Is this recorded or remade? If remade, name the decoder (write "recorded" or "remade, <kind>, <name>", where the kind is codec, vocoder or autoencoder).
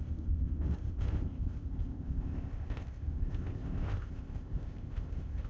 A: remade, codec, ZipCodec